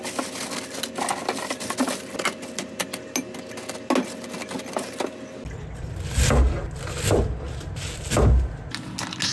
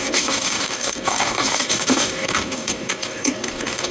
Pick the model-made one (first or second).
second